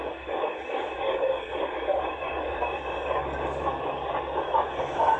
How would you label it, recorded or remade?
remade